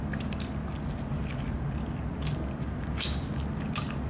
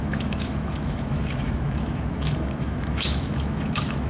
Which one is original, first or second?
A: first